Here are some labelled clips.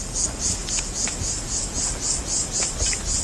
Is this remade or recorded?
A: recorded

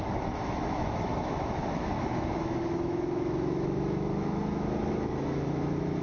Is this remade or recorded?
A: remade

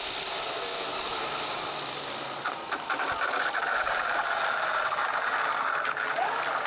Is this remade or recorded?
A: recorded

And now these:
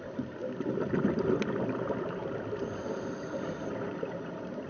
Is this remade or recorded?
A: recorded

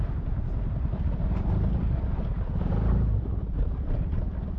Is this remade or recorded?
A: recorded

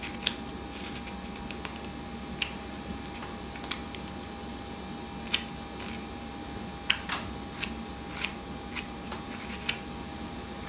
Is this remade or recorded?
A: recorded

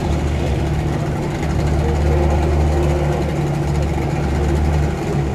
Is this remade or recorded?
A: recorded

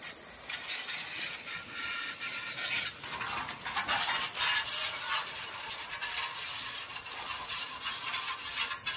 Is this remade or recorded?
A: recorded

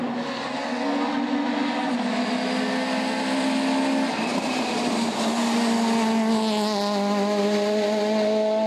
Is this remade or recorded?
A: recorded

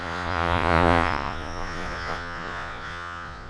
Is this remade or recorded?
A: remade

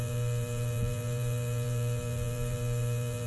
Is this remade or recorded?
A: remade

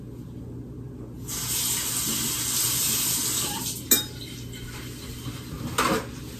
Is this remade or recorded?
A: recorded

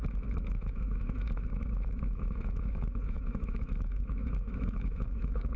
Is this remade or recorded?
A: remade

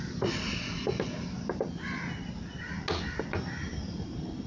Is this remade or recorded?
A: recorded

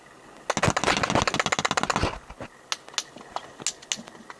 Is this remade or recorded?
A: recorded